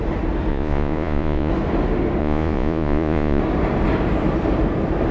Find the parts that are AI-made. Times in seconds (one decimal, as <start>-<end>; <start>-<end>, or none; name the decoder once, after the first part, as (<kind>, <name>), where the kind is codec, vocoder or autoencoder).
0.5-1.5 (vocoder, Vocos); 2.2-3.4